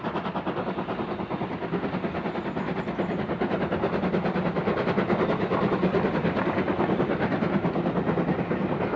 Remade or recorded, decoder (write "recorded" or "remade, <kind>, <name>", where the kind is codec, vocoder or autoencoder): recorded